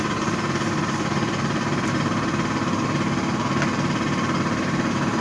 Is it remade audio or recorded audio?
remade